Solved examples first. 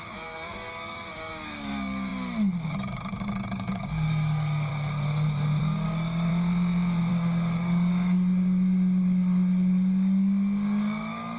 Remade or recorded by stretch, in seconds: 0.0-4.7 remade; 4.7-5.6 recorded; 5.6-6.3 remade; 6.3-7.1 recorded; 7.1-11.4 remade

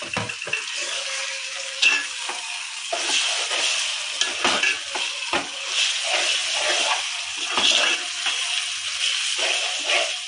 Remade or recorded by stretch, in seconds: 0.0-0.8 recorded; 0.8-2.9 remade; 2.9-10.3 recorded

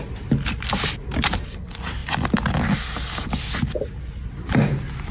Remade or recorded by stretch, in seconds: 0.0-5.1 recorded

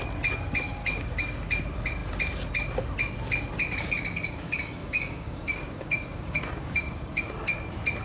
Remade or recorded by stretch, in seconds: 0.0-0.8 recorded; 0.8-1.6 remade; 1.6-4.8 recorded; 4.8-7.2 remade; 7.2-8.0 recorded

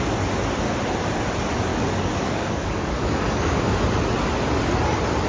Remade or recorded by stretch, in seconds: 0.0-1.7 recorded; 1.7-3.7 remade; 3.7-5.3 recorded

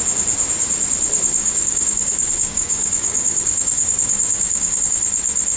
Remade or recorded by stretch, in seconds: 0.0-1.4 recorded; 1.4-4.8 remade; 4.8-5.6 recorded

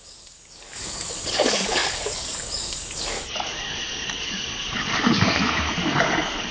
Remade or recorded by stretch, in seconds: 0.0-6.5 remade

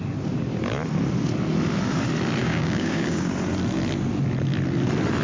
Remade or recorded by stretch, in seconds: 0.0-2.4 recorded; 2.4-3.3 remade; 3.3-5.2 recorded